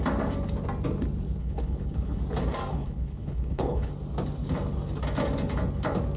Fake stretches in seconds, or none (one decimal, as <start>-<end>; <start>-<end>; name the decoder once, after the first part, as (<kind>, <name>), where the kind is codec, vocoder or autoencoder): 1.4-2.2 (codec, HILCodec); 2.7-3.9

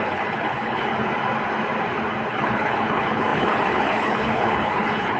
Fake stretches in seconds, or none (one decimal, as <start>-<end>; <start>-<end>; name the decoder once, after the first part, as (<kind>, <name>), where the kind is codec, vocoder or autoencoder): 0.0-0.9 (codec, HILCodec); 2.3-5.2

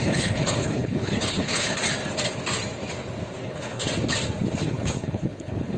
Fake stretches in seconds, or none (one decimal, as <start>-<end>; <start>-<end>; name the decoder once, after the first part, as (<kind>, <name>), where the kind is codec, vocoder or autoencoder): 0.0-1.8 (codec, HILCodec); 3.4-3.9; 4.6-5.8

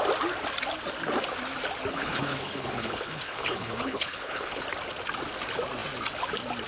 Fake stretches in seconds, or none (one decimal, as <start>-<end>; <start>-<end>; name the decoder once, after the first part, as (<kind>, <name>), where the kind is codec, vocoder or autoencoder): 1.9-4.6 (codec, HILCodec)

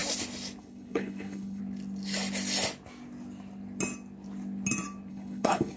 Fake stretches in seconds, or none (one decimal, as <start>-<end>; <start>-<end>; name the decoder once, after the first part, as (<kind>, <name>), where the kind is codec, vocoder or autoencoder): 0.6-1.6 (codec, HILCodec); 5.1-5.8

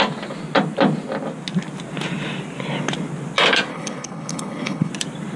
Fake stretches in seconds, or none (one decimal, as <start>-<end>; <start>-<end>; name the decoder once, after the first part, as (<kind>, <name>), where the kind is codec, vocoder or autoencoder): 3.7-4.9 (codec, HILCodec)